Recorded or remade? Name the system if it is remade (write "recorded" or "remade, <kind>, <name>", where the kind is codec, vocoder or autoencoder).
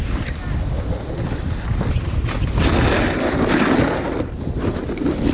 recorded